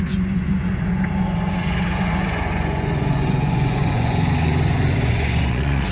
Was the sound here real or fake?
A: fake